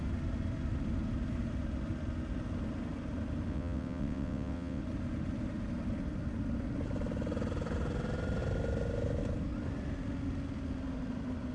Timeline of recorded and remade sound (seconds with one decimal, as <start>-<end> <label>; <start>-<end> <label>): 0.0-3.5 recorded; 3.5-4.8 remade; 4.8-11.5 recorded